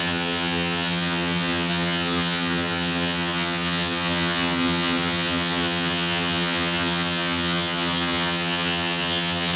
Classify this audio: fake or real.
fake